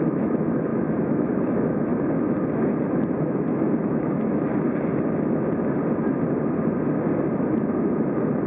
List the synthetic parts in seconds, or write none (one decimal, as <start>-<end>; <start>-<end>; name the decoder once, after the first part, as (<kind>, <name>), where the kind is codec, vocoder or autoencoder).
0.0-1.9 (autoencoder, DAC-VAE); 3.2-4.5